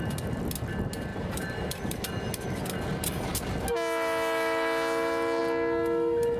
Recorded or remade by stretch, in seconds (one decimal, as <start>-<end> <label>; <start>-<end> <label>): 0.0-1.1 recorded; 1.1-2.0 remade; 2.0-6.4 recorded